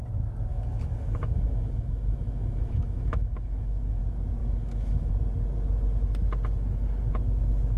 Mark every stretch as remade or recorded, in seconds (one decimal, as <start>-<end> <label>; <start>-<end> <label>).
0.0-0.5 recorded; 0.5-4.0 remade; 4.0-4.4 recorded; 4.4-5.1 remade; 5.1-7.8 recorded